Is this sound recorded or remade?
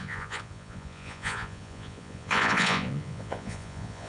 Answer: remade